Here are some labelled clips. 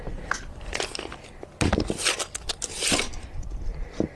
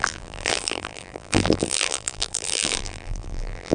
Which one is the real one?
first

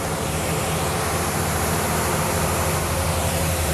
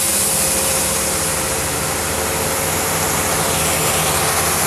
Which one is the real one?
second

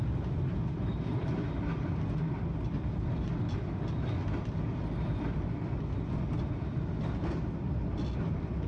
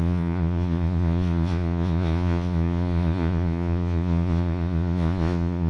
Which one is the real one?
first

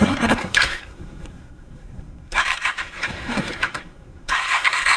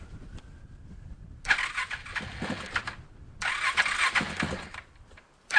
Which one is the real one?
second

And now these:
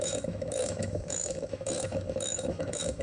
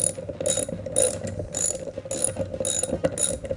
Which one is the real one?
second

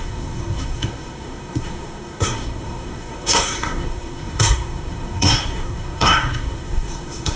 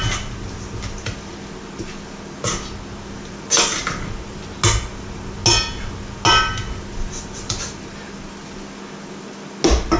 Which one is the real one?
second